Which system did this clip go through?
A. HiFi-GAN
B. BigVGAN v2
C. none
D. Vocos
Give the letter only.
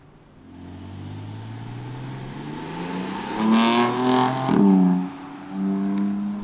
C